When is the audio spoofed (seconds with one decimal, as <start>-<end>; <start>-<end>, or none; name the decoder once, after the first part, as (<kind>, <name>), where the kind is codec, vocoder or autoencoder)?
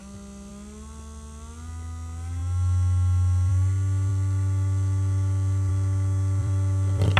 4.1-5.7 (vocoder, BigVGAN v2); 6.4-7.2